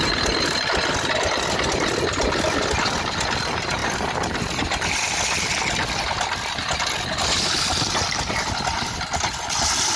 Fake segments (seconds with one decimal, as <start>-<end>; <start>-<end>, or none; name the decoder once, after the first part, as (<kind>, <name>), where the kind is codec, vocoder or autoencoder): none